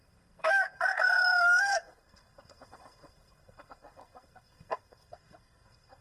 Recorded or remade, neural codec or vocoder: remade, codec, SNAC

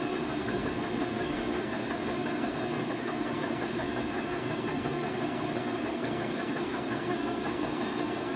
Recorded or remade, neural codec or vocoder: remade, codec, SNAC